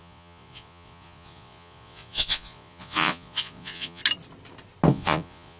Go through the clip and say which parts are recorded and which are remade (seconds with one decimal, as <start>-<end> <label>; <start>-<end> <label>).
0.0-4.0 remade; 4.0-4.9 recorded; 4.9-5.6 remade